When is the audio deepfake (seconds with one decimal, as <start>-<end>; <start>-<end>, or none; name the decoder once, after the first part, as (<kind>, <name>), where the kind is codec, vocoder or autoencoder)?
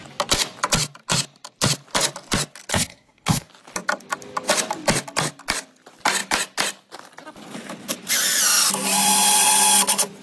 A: 2.7-3.5 (codec, SNAC)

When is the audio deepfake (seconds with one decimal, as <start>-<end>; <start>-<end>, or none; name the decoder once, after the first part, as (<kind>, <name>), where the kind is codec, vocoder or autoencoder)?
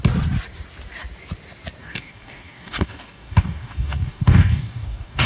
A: 1.8-5.3 (codec, DAC)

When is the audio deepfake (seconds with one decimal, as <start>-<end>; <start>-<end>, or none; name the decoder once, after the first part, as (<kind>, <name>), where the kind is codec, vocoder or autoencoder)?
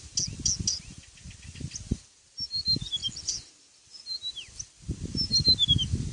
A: none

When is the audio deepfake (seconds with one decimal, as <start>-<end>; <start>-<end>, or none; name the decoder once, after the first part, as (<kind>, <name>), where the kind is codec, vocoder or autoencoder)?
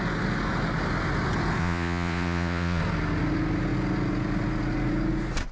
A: 1.6-2.8 (vocoder, Vocos)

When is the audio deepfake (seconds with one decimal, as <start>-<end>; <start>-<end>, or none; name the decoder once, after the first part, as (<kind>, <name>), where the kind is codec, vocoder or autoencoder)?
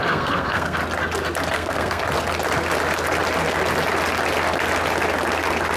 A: 0.0-0.8 (codec, SNAC); 1.5-2.0